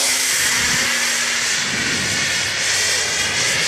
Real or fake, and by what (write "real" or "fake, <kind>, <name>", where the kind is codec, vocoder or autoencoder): real